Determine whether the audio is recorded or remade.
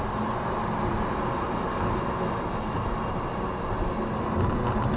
recorded